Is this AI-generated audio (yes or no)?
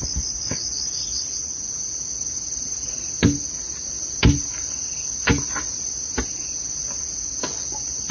no